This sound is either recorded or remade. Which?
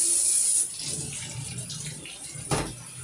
recorded